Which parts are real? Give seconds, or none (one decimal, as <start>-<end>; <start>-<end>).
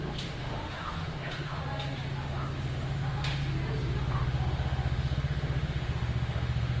1.6-2.2; 3.4-4.0